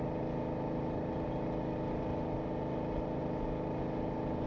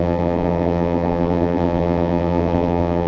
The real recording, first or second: first